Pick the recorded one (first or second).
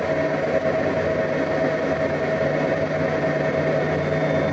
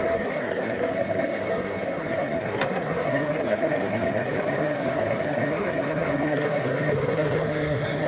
first